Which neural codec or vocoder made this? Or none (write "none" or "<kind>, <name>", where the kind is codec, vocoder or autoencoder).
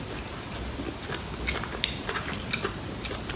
none